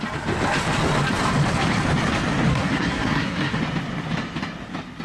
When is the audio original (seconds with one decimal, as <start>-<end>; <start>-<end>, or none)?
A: 0.0-2.5; 3.6-5.0